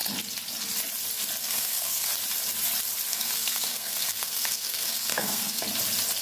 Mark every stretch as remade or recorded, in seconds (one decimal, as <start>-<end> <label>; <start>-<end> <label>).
0.0-1.4 recorded; 1.4-2.1 remade; 2.1-3.1 recorded; 3.1-5.6 remade; 5.6-6.2 recorded